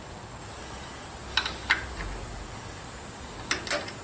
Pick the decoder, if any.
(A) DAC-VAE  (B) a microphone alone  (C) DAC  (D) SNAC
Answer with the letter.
B